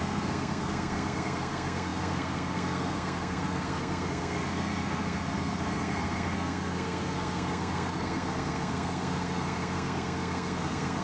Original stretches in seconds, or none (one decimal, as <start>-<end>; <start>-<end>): none